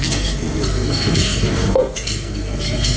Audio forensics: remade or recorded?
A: remade